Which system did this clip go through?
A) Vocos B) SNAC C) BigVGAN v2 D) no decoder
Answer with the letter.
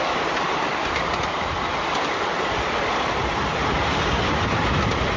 C